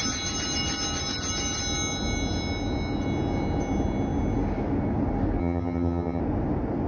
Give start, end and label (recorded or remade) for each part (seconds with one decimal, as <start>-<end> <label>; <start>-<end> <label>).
0.0-5.4 recorded; 5.4-6.2 remade; 6.2-6.9 recorded